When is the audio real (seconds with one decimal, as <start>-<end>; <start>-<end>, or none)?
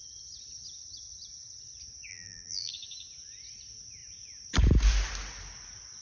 0.0-2.1; 2.7-6.0